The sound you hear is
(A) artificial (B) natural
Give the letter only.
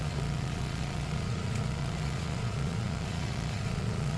A